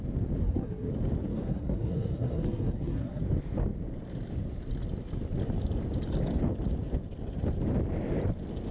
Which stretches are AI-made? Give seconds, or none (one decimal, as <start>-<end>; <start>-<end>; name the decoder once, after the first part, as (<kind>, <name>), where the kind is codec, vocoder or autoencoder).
0.4-0.9 (codec, SNAC); 1.3-3.2